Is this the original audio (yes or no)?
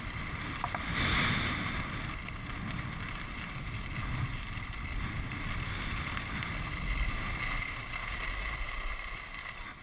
yes